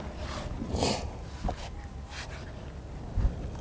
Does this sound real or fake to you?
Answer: real